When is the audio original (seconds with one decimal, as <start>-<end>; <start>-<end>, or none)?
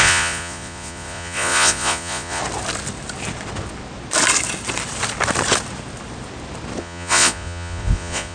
2.4-6.8